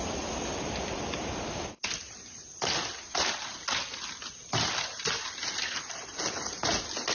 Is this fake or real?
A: real